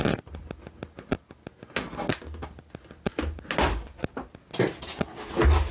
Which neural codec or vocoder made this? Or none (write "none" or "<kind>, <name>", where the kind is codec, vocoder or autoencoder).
none